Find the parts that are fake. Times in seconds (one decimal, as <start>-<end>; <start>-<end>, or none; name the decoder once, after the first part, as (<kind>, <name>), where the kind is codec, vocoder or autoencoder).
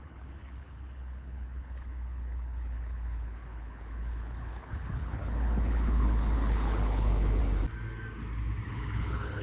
0.0-7.4 (codec, HILCodec); 8.7-9.4